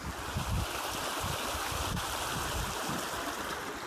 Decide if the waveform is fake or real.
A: fake